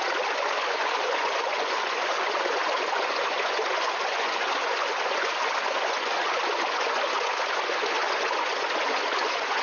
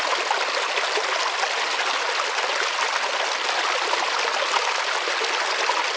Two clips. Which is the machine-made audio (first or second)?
first